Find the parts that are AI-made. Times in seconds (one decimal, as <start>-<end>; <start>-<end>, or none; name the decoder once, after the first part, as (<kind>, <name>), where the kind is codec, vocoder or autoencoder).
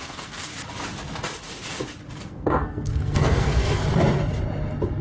0.0-0.5 (codec, SNAC); 2.2-3.8